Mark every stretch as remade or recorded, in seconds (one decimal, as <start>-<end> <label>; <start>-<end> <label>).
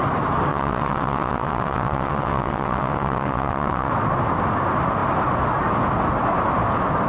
0.0-0.5 recorded; 0.5-3.9 remade; 3.9-7.1 recorded